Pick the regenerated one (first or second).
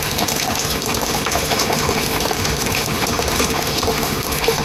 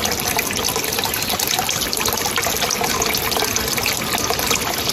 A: first